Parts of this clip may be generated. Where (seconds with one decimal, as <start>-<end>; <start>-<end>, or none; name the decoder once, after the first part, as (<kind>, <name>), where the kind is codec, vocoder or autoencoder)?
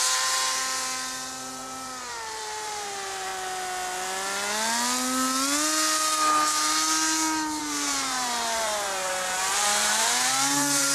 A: 0.0-3.3 (vocoder, BigVGAN v2); 7.6-10.9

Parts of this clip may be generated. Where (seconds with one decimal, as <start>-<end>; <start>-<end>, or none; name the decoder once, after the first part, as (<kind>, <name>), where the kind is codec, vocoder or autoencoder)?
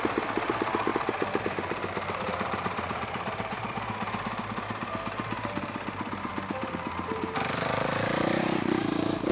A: 0.0-9.3 (vocoder, BigVGAN v2)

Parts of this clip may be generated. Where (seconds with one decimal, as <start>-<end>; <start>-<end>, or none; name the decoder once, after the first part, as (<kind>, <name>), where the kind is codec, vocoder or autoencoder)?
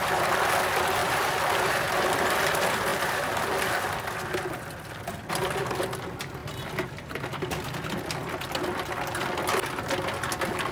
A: none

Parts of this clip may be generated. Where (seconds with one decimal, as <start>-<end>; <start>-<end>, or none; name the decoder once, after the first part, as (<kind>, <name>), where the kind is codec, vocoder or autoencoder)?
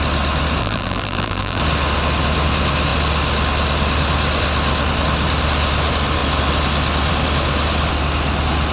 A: 0.6-1.6 (vocoder, BigVGAN v2)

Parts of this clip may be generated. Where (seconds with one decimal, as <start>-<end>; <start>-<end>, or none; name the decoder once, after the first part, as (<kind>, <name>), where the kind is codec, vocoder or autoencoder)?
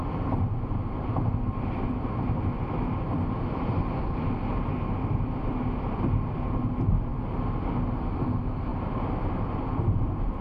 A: none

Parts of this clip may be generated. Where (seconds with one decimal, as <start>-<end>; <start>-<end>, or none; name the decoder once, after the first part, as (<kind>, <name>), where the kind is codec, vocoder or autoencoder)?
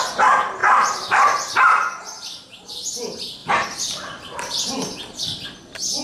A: 0.6-2.7 (vocoder, BigVGAN v2); 3.4-4.5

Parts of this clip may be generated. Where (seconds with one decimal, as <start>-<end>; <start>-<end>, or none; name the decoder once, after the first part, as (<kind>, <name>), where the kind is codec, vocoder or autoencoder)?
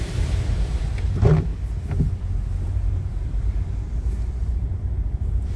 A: 0.0-1.5 (vocoder, BigVGAN v2); 2.7-5.6